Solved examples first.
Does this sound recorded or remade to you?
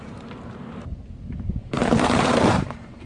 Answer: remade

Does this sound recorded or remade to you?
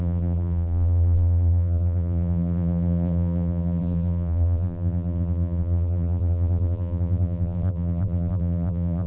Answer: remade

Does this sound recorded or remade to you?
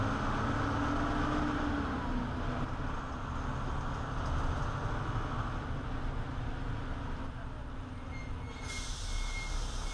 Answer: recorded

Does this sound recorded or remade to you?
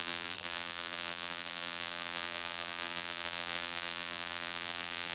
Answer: remade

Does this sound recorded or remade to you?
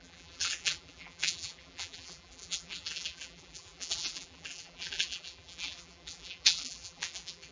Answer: remade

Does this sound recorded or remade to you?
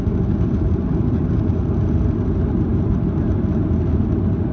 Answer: recorded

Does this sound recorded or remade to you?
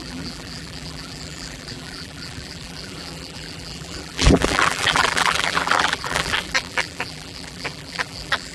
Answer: remade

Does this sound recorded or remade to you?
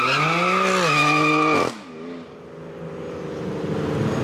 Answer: recorded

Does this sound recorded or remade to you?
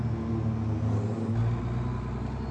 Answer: recorded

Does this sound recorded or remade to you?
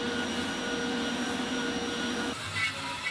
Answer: recorded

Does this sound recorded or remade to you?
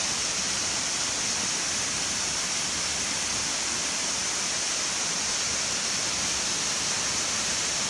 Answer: remade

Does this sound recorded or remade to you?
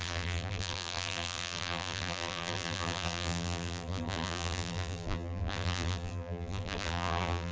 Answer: remade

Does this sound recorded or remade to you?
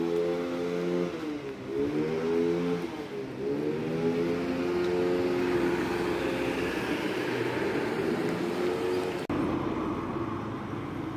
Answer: recorded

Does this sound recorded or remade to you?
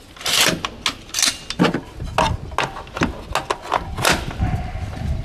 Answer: recorded